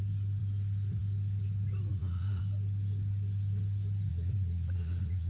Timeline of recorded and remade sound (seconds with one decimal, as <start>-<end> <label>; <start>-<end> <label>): 0.0-1.9 recorded; 1.9-2.4 remade; 2.4-4.1 recorded; 4.1-5.3 remade